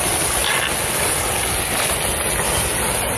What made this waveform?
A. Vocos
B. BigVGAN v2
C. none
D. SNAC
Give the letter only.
C